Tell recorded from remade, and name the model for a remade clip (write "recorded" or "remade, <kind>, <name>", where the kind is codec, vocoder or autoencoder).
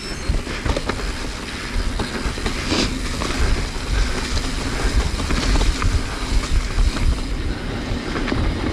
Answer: recorded